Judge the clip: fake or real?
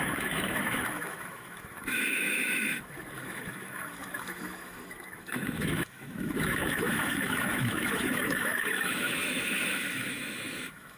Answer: fake